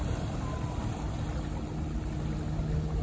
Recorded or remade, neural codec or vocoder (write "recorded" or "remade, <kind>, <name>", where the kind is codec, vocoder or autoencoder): recorded